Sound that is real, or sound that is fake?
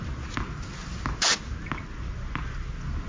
real